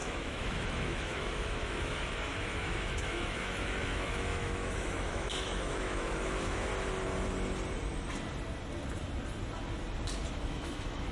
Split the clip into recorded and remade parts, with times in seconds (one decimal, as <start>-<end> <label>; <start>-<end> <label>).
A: 0.0-6.7 remade; 6.7-10.3 recorded; 10.3-11.1 remade